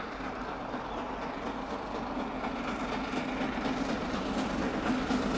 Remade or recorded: recorded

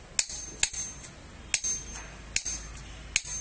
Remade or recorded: recorded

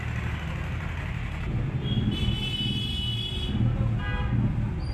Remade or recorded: recorded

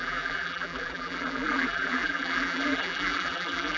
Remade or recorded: remade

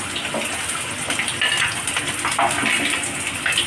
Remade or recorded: recorded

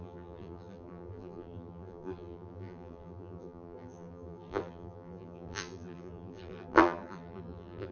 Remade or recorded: remade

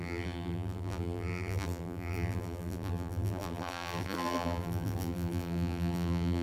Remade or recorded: remade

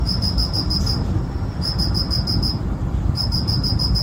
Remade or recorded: remade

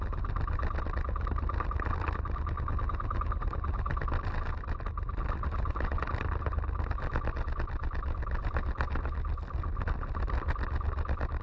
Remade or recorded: recorded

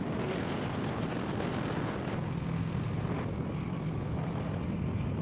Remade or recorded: recorded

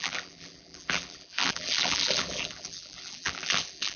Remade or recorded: remade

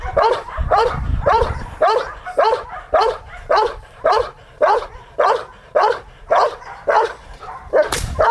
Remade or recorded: remade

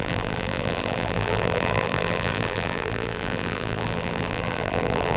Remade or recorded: remade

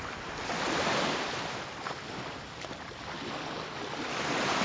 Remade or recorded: remade